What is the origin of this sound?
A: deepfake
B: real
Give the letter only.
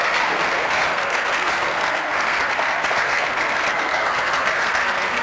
A